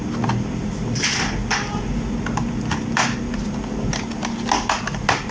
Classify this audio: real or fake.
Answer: real